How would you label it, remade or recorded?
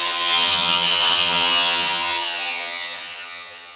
remade